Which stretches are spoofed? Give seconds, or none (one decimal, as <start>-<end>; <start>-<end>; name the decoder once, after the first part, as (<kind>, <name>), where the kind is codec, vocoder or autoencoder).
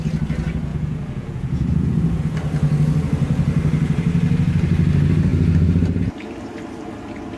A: 0.7-2.2 (vocoder, Vocos)